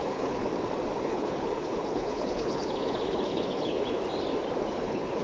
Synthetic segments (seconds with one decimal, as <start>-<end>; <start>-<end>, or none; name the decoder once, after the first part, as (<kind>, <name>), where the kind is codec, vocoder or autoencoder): 0.0-0.5 (codec, HILCodec); 1.0-4.0; 4.7-5.2